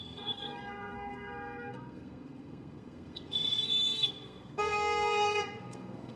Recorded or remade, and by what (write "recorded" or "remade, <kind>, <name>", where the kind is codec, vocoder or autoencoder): remade, codec, SNAC